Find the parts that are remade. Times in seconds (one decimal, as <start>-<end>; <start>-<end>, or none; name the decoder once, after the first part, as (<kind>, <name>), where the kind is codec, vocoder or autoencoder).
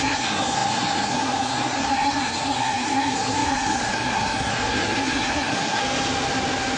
0.0-5.8 (codec, SNAC)